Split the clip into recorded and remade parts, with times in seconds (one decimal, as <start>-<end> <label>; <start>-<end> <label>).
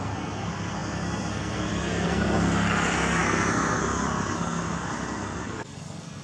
0.0-6.2 remade